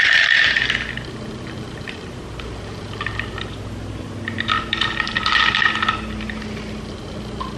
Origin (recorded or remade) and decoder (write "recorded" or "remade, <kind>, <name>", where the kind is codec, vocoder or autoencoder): remade, vocoder, BigVGAN v2